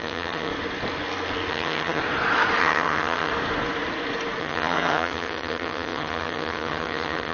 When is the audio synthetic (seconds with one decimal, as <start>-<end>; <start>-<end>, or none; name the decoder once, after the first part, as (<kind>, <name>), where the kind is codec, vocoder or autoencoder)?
0.0-0.5 (vocoder, HiFi-GAN); 1.5-2.0; 2.6-3.3; 4.4-7.3